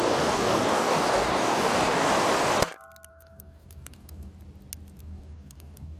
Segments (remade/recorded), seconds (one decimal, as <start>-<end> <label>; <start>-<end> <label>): 0.0-2.1 remade; 2.1-3.1 recorded; 3.1-4.3 remade; 4.3-5.0 recorded; 5.0-6.0 remade